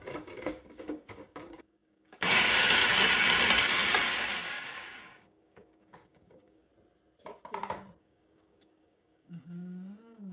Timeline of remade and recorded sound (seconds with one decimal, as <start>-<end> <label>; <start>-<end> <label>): 0.0-2.8 remade; 2.8-4.4 recorded; 4.4-6.7 remade; 6.7-8.0 recorded; 8.0-10.3 remade